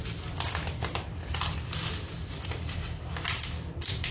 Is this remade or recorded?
recorded